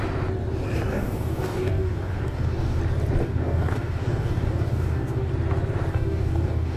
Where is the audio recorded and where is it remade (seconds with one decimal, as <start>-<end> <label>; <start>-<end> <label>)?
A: 0.0-0.9 recorded; 0.9-2.8 remade; 2.8-3.2 recorded; 3.2-5.3 remade; 5.3-5.9 recorded; 5.9-6.8 remade